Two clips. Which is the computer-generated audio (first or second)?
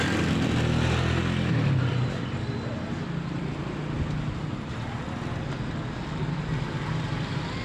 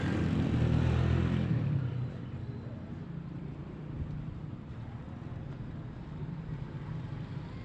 second